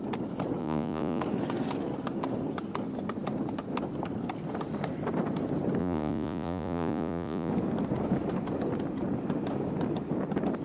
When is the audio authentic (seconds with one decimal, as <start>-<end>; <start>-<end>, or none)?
0.0-0.6; 1.2-5.8; 7.5-10.6